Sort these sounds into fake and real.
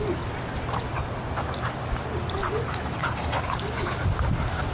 real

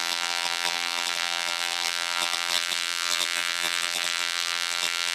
fake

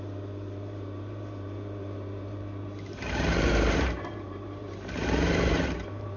fake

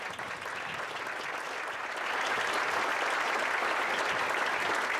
real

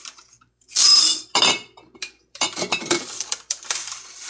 fake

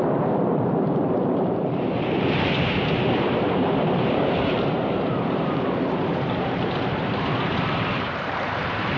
fake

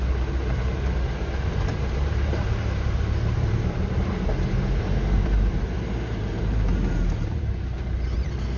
fake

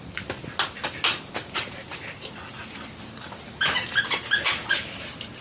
real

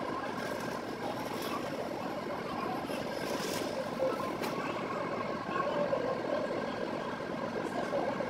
real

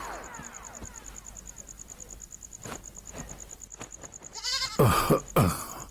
real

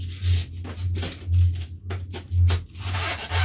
real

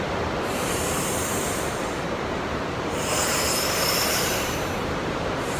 fake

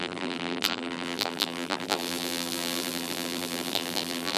fake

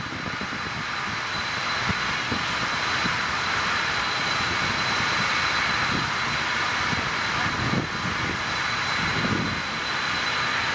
real